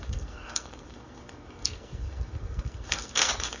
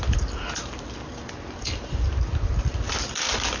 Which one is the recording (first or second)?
second